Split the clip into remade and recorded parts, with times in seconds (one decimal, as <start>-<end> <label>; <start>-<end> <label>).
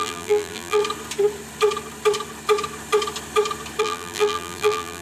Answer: 0.0-0.8 remade; 0.8-3.8 recorded; 3.8-5.0 remade